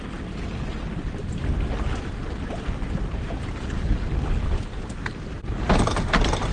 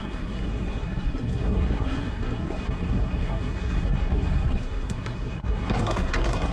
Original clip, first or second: first